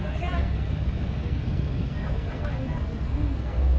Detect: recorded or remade remade